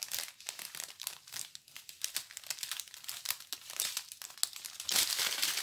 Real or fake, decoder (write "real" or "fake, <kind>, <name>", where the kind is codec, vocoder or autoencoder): real